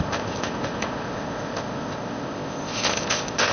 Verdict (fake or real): fake